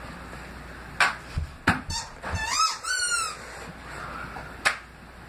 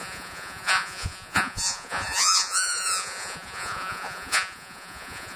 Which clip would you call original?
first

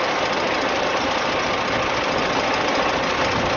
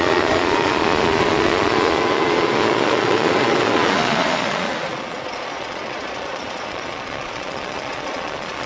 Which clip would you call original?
first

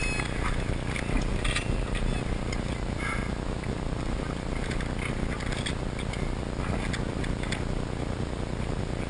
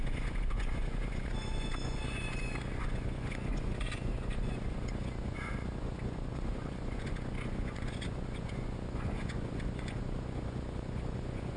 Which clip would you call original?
first